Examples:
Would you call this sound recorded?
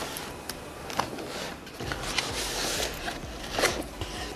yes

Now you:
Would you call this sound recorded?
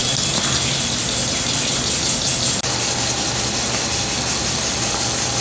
yes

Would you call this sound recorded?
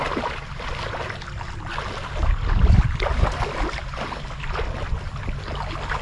yes